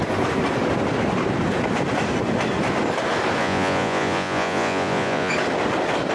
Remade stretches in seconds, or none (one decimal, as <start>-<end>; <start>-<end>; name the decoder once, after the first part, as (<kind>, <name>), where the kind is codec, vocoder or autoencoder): 3.4-5.3 (vocoder, Vocos)